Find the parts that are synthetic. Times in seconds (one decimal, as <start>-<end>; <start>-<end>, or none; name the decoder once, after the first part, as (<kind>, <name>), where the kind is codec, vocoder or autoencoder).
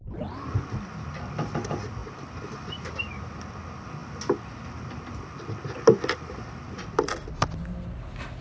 none